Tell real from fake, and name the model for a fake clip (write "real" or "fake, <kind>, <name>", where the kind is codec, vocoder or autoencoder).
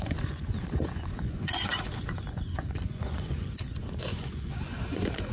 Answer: fake, vocoder, Vocos